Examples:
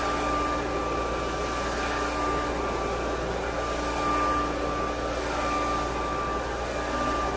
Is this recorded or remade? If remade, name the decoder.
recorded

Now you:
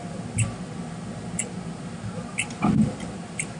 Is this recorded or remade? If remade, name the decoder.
recorded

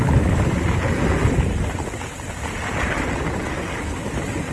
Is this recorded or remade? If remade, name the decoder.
recorded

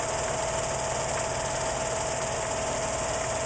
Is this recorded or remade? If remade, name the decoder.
recorded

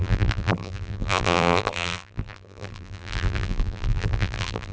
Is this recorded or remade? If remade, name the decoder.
remade, vocoder, BigVGAN v2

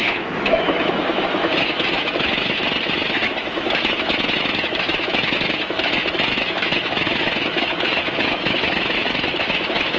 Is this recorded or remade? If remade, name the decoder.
remade, autoencoder, DAC-VAE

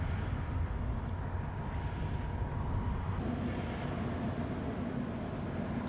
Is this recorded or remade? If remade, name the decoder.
recorded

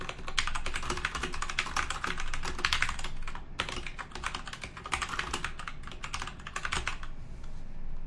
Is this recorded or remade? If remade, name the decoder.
recorded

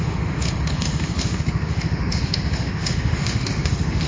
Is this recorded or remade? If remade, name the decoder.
remade, autoencoder, DAC-VAE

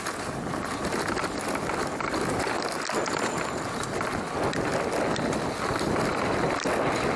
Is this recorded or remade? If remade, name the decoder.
recorded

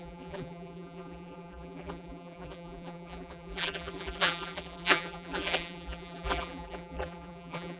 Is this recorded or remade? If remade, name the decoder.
remade, vocoder, BigVGAN v2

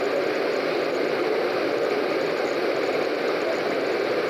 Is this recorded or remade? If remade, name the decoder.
recorded